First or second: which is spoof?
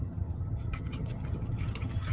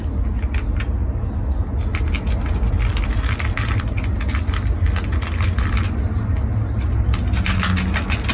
first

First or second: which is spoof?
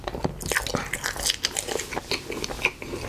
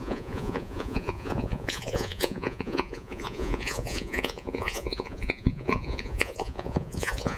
second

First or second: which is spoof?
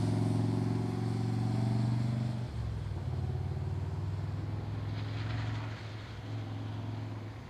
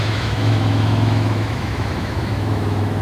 second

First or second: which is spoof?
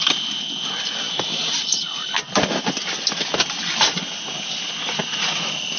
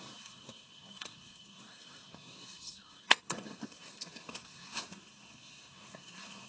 second